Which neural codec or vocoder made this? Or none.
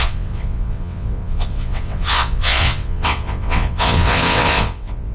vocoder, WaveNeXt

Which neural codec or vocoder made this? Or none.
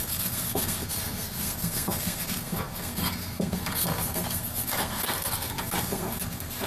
codec, SNAC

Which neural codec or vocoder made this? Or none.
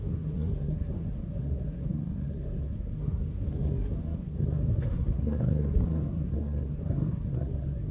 codec, SNAC